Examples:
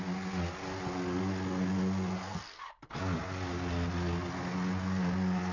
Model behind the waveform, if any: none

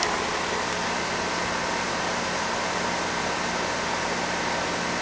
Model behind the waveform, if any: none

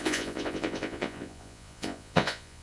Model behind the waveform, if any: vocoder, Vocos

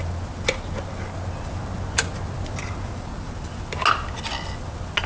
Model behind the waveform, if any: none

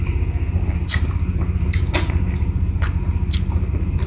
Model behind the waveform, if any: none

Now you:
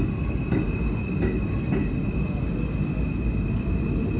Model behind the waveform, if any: none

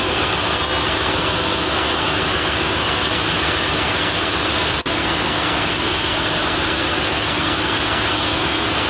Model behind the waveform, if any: codec, SNAC